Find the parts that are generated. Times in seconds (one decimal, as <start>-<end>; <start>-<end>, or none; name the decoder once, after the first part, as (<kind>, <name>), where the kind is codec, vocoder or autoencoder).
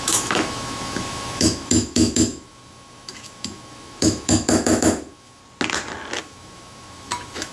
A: 0.0-5.4 (autoencoder, DAC-VAE); 6.2-7.5